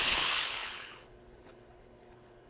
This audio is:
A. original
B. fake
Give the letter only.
B